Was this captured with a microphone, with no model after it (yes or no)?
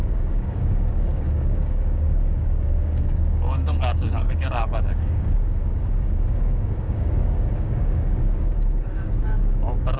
no